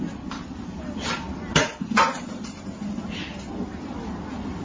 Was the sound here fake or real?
real